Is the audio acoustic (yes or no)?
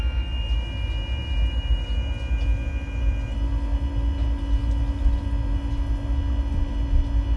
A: yes